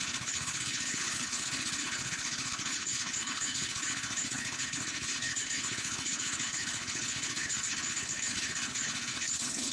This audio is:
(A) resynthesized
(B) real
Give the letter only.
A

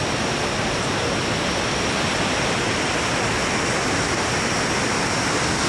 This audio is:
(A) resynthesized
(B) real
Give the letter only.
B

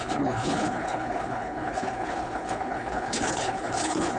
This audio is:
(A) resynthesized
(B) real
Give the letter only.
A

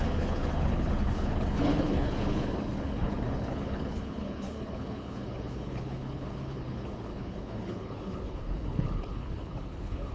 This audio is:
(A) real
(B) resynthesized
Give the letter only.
B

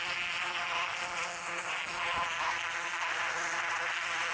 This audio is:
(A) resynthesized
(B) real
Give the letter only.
B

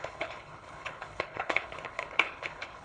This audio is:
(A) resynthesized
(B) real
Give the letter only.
A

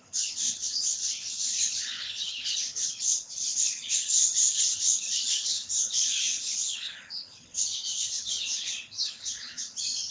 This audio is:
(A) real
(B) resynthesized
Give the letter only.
B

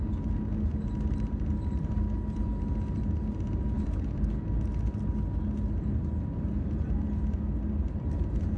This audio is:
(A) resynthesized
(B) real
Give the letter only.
B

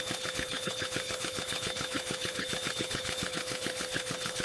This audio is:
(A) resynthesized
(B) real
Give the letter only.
A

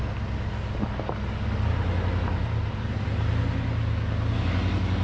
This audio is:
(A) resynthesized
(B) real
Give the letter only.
B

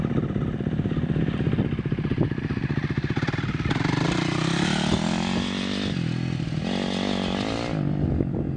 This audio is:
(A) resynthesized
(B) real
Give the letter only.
B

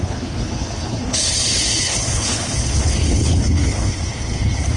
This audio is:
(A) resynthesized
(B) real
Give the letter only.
A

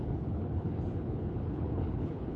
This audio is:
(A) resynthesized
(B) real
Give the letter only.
A